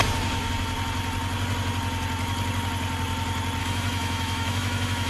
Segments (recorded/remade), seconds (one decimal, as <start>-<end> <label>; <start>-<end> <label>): 0.0-3.6 recorded; 3.6-5.1 remade

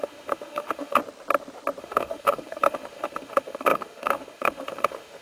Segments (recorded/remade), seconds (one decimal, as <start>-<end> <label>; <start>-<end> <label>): 0.0-1.0 remade; 1.0-1.8 recorded; 1.8-5.2 remade

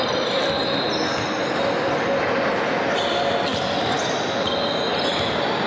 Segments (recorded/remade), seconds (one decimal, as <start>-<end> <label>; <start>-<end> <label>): 0.0-5.7 recorded